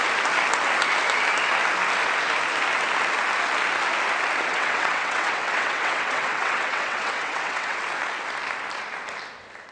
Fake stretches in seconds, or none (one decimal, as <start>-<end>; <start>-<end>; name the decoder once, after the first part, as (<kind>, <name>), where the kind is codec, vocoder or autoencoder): 4.5-7.8 (vocoder, WaveNeXt)